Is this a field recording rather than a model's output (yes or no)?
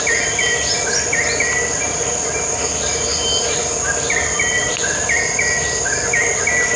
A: yes